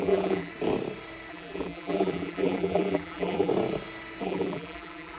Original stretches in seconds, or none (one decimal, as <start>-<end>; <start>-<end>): 0.5-1.3; 3.5-4.2